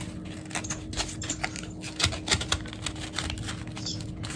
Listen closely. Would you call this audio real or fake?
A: real